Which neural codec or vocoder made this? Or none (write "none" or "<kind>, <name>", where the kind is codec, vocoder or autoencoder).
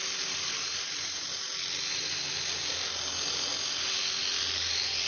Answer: none